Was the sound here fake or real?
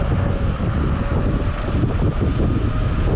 real